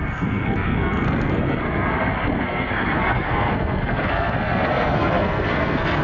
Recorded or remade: remade